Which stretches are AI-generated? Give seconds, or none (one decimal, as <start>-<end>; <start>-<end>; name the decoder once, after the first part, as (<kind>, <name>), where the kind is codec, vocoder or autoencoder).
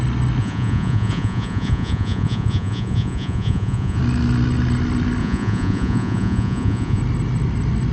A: 0.4-4.0 (vocoder, Vocos); 5.2-7.0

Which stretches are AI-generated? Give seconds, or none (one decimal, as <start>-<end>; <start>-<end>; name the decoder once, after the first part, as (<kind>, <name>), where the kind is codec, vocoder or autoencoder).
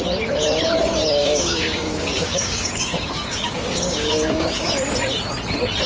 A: 1.2-4.7 (codec, DAC)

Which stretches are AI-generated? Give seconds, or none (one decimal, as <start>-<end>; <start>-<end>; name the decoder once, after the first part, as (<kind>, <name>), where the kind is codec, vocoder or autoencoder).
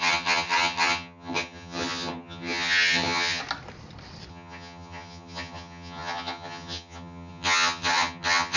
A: 0.0-3.4 (vocoder, HiFi-GAN); 4.3-8.6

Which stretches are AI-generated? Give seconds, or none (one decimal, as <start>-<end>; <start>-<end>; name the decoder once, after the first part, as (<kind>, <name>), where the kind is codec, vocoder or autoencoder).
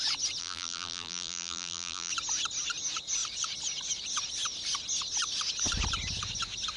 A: 0.4-2.1 (vocoder, BigVGAN v2)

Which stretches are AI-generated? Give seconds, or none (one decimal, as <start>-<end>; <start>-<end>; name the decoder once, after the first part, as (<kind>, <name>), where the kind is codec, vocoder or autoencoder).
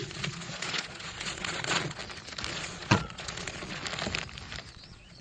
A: 0.0-2.0 (vocoder, Vocos); 2.5-3.8; 4.7-5.2